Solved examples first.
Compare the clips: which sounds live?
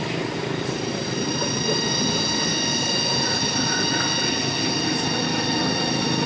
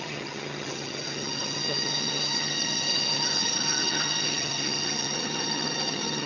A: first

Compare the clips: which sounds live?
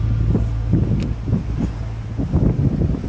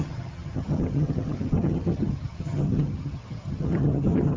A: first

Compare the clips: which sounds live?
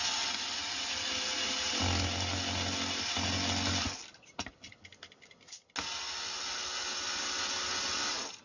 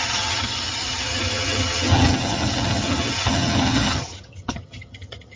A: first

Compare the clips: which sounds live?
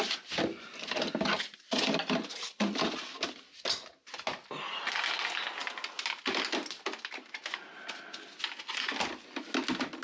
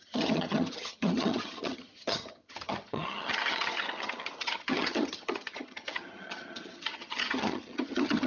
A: first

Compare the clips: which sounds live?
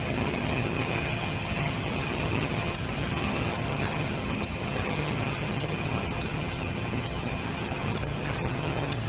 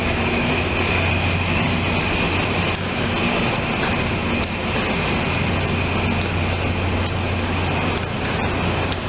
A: second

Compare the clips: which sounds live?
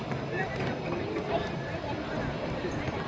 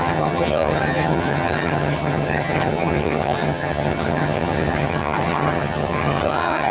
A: first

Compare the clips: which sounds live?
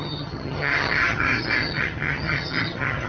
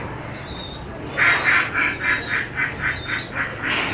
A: second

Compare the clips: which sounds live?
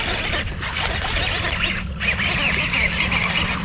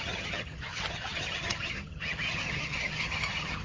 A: first